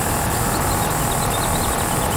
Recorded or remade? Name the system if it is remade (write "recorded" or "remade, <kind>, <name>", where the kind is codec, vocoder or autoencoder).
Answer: recorded